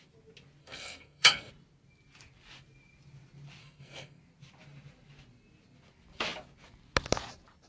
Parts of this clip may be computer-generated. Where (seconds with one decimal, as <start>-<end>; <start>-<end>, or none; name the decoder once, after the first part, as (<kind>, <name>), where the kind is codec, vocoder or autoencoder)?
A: 0.6-1.5 (codec, SNAC); 3.6-4.2